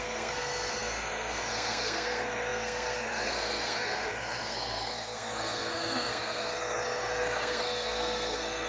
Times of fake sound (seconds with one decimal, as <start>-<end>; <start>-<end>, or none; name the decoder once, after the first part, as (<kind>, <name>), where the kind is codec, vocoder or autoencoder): 0.0-8.7 (codec, SNAC)